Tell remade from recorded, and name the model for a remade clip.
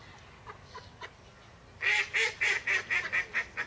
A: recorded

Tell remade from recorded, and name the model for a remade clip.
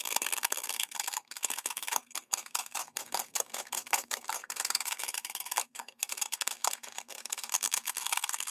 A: remade, codec, SNAC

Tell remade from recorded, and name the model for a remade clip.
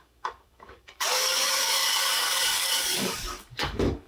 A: remade, codec, DAC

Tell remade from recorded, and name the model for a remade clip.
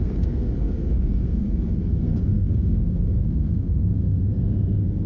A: remade, codec, SNAC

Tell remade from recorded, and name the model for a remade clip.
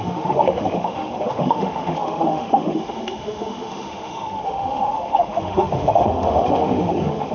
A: remade, autoencoder, DAC-VAE